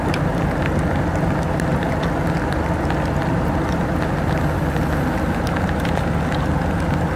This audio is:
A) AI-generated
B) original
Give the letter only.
B